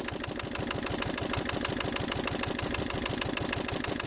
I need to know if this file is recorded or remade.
recorded